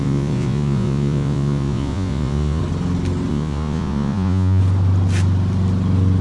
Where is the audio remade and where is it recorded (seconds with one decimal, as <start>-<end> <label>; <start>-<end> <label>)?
0.0-2.6 remade; 2.6-3.3 recorded; 3.3-4.6 remade; 4.6-6.2 recorded